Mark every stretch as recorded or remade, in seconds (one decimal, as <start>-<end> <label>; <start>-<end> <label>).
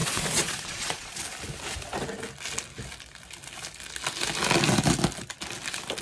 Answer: 0.0-1.2 remade; 1.2-6.0 recorded